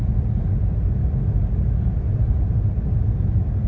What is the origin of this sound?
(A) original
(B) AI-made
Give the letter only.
A